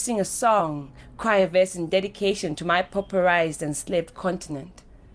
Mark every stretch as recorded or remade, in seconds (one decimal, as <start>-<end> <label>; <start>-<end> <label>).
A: 0.0-5.1 recorded

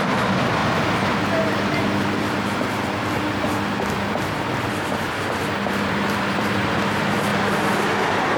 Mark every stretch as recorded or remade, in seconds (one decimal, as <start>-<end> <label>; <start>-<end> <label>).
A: 0.0-0.6 remade; 0.6-4.1 recorded; 4.1-7.3 remade; 7.3-8.0 recorded; 8.0-8.4 remade

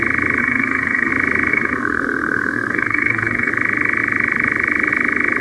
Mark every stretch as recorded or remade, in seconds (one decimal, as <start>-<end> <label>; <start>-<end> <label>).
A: 0.0-0.4 recorded; 0.4-1.1 remade; 1.1-1.5 recorded; 1.5-3.5 remade; 3.5-5.4 recorded

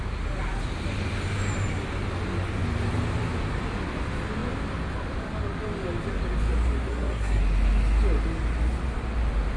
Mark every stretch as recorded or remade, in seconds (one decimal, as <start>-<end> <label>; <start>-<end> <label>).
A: 0.0-6.9 recorded; 6.9-7.4 remade; 7.4-9.6 recorded